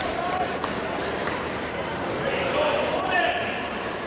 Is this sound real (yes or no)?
no